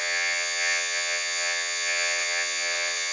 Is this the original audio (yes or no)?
no